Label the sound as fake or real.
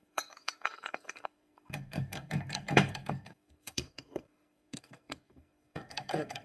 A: fake